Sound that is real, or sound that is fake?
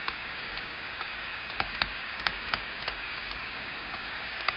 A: fake